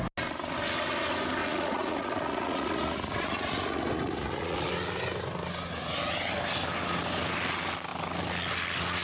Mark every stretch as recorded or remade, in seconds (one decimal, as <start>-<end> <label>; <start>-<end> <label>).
0.0-1.4 recorded; 1.4-4.7 remade; 4.7-9.0 recorded